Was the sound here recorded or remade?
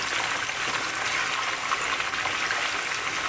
recorded